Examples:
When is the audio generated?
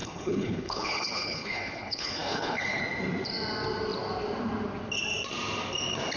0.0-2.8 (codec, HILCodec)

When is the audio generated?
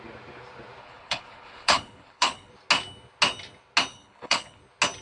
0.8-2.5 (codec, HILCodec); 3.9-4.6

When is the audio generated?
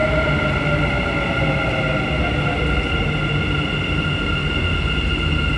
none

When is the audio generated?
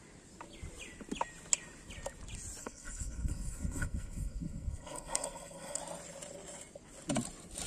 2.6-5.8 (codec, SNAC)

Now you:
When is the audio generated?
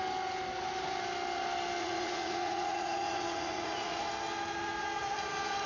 1.8-4.1 (vocoder, Vocos)